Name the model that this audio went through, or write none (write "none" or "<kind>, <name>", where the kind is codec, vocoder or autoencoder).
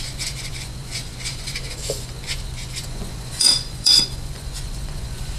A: vocoder, Vocos